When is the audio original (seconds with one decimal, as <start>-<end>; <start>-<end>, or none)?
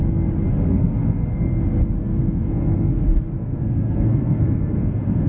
0.0-0.5; 1.6-2.0